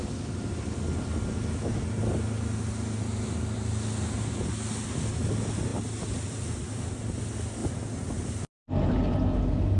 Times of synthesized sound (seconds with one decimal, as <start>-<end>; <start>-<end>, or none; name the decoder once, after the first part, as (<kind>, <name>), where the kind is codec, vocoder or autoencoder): 5.7-7.0 (vocoder, BigVGAN v2)

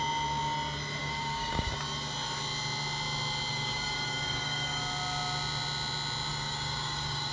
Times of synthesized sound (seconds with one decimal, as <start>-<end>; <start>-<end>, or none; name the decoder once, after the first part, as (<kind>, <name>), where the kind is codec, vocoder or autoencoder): 1.0-1.7 (codec, DAC); 3.5-4.8; 6.3-7.3

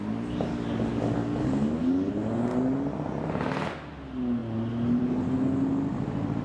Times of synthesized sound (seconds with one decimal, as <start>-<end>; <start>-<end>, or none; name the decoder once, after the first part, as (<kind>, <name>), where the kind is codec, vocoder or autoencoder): 0.5-2.1 (codec, DAC)